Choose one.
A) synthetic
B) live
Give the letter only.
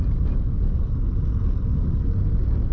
B